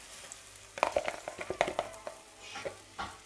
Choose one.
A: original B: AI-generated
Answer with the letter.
A